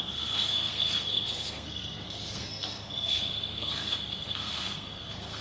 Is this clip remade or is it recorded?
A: remade